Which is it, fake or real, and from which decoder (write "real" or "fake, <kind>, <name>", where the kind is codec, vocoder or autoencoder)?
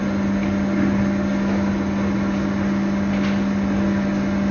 real